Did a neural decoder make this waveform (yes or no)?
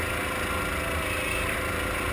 no